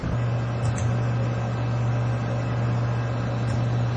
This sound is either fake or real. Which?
real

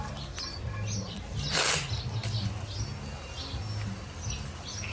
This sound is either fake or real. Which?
real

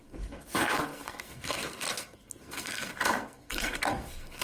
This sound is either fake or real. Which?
fake